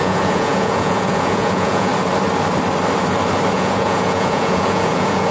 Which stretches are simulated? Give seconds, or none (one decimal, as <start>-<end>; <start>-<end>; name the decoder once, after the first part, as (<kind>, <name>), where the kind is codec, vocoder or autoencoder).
0.0-1.9 (vocoder, Vocos); 3.5-5.3